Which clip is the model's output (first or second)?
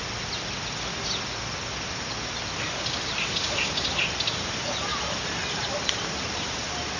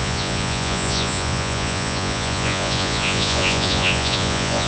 second